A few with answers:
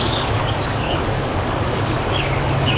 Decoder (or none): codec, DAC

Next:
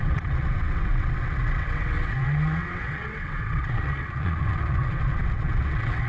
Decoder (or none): vocoder, WaveNeXt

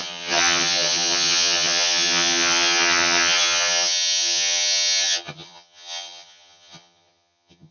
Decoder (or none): vocoder, HiFi-GAN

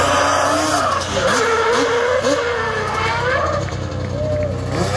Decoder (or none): none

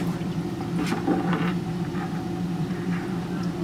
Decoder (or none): vocoder, BigVGAN v2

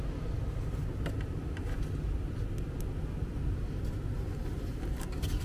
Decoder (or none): none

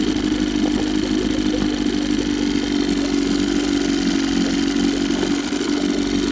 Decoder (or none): none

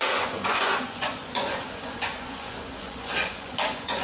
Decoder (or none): vocoder, Vocos